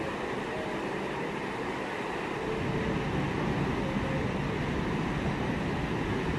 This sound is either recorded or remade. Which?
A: recorded